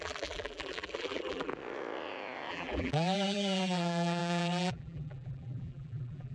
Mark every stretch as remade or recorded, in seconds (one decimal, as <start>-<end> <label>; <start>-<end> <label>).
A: 0.0-1.5 remade; 1.5-2.5 recorded; 2.5-6.3 remade